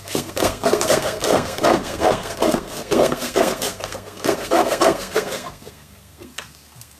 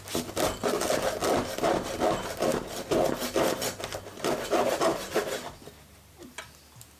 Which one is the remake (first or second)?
first